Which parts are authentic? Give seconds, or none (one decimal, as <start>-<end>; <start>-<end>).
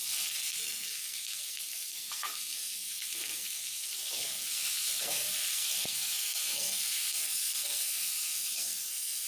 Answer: none